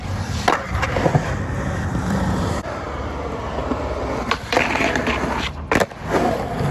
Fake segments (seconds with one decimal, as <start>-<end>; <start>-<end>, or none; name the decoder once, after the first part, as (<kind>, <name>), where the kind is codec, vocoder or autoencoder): 1.9-2.5 (vocoder, BigVGAN v2); 3.6-5.6; 6.0-6.7